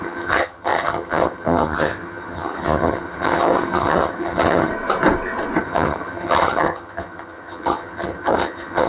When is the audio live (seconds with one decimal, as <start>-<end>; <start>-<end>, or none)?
4.7-5.6

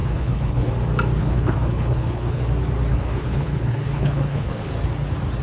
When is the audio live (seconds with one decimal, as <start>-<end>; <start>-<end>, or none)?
0.7-1.2; 2.4-2.9; 4.7-5.4

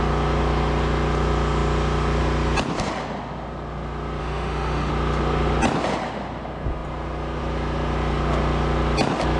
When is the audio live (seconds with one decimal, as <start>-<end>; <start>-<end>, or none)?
0.0-4.2; 4.9-9.4

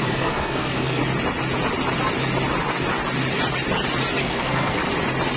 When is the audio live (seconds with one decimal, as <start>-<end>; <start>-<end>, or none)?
1.0-4.2; 4.8-5.4

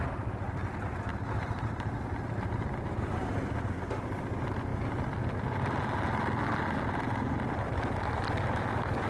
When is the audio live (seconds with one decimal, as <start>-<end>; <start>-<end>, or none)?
4.7-7.5